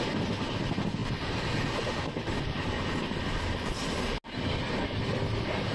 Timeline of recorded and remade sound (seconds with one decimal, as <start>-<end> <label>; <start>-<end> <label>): 0.0-5.7 recorded